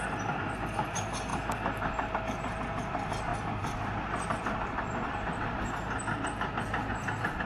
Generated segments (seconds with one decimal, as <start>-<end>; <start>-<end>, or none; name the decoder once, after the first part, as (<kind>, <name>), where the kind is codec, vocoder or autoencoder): 3.3-5.7 (vocoder, BigVGAN v2); 6.9-7.5